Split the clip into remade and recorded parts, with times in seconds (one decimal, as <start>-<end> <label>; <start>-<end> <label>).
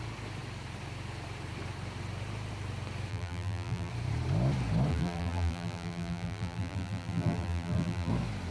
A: 0.0-3.1 recorded; 3.1-3.9 remade; 3.9-4.9 recorded; 4.9-8.1 remade; 8.1-8.5 recorded